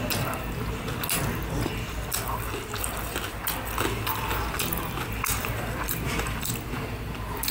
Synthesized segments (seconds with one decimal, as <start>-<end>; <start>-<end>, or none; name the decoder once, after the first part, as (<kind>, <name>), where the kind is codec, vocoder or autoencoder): 5.4-6.5 (vocoder, BigVGAN v2)